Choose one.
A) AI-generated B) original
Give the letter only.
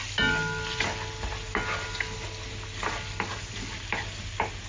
B